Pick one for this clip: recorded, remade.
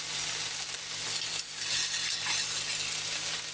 recorded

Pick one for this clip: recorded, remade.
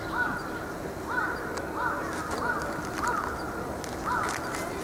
recorded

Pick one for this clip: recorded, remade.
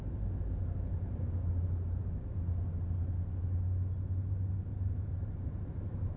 recorded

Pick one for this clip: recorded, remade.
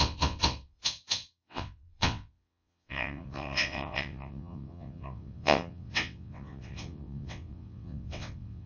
remade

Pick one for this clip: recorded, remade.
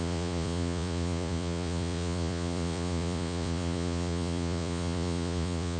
remade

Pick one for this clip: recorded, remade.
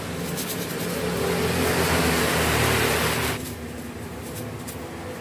recorded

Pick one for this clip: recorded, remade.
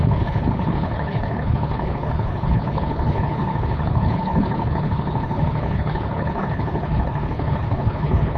remade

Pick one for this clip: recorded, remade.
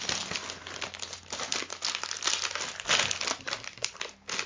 recorded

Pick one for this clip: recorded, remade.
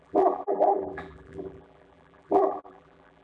remade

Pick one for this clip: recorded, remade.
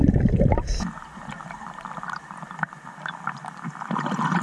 recorded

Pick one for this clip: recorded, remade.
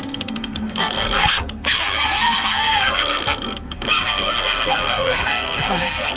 remade